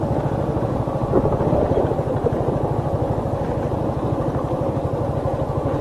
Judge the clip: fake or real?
real